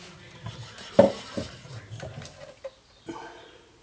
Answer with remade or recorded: recorded